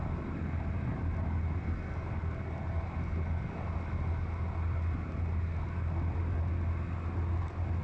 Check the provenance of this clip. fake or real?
real